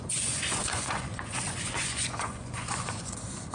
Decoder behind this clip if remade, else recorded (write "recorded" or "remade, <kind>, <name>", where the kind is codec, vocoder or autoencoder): remade, vocoder, Vocos